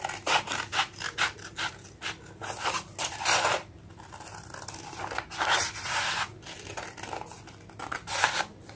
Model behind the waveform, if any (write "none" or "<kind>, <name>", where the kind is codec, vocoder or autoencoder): none